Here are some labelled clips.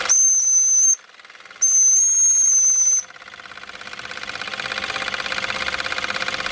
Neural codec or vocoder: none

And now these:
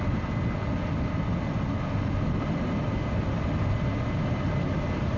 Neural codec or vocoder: none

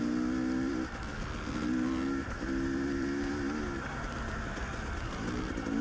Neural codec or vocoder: none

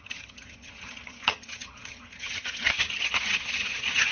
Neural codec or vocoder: vocoder, HiFi-GAN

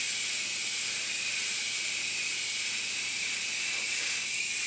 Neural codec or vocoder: none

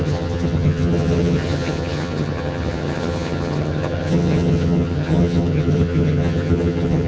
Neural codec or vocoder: vocoder, HiFi-GAN